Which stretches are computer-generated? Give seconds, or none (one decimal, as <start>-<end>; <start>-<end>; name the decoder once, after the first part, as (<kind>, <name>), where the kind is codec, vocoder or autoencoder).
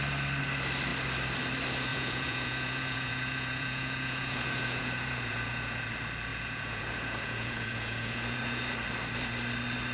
1.9-5.8 (vocoder, Vocos); 6.3-8.6